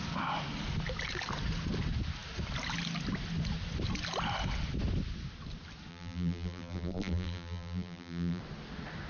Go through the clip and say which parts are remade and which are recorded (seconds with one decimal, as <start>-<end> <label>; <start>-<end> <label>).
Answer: 0.0-5.9 recorded; 5.9-8.4 remade; 8.4-9.1 recorded